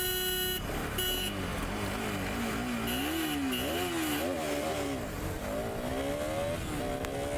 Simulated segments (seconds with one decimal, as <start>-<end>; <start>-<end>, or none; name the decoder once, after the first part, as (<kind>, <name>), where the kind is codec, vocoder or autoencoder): none